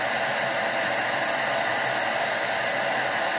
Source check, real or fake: real